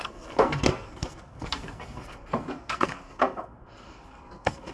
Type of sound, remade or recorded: remade